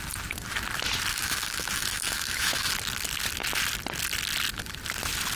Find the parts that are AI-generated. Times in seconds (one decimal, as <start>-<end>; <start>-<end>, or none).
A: 1.1-2.7